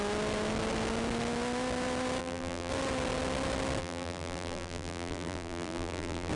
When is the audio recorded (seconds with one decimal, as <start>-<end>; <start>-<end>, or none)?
0.0-2.2; 2.7-3.8